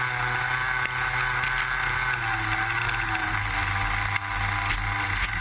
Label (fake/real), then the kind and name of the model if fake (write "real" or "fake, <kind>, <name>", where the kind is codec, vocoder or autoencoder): real